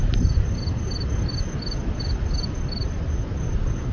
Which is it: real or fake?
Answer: real